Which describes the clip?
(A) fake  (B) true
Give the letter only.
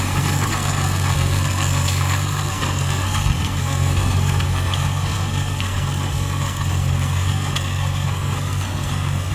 A